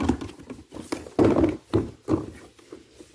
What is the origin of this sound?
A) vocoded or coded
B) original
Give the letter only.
B